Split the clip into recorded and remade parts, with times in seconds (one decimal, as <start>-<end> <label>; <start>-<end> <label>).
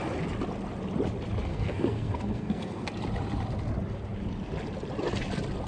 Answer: 0.0-1.5 recorded; 1.5-2.9 remade; 2.9-5.7 recorded